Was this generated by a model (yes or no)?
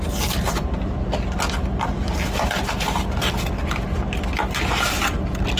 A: no